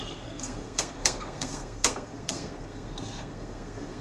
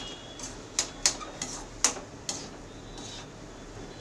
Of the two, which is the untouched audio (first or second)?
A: second